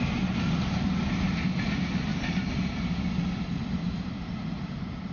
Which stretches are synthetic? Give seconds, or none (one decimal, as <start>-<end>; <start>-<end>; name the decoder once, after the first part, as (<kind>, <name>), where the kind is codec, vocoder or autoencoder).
2.1-2.9 (vocoder, BigVGAN v2); 3.8-5.1